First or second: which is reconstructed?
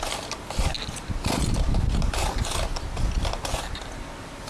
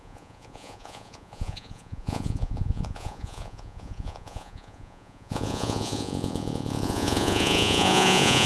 second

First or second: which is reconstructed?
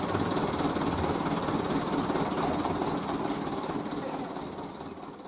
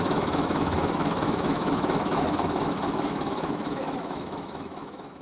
second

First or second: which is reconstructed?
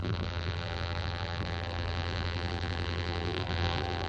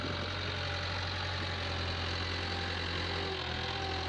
first